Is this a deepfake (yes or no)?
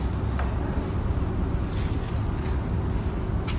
no